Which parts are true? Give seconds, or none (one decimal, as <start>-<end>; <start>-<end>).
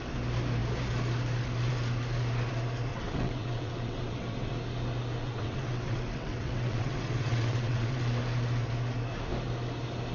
0.0-2.9; 4.5-5.2; 8.0-10.1